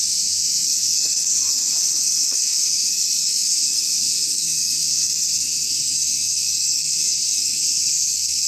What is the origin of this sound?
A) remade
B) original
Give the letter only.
A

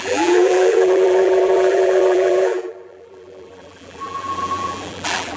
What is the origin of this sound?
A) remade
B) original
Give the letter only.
A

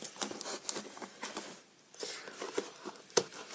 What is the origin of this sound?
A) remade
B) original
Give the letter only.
B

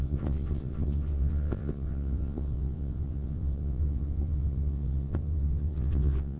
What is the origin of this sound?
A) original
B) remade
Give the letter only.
B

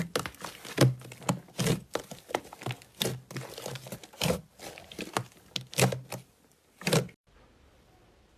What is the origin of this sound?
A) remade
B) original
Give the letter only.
B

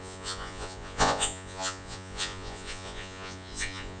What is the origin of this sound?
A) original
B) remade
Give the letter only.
B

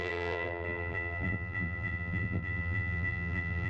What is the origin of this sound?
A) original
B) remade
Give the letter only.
B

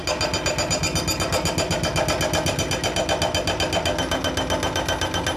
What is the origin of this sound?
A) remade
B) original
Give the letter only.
B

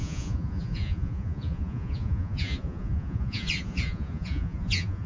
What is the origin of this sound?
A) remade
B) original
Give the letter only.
A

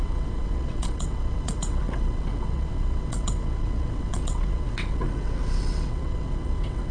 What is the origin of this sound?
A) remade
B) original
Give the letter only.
A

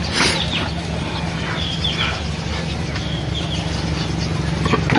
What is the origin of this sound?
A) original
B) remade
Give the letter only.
A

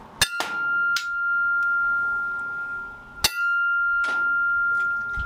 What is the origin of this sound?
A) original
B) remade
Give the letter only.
A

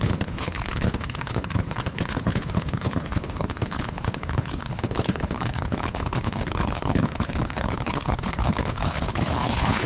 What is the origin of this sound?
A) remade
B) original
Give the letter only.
A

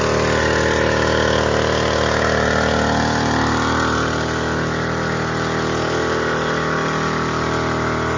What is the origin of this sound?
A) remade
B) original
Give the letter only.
B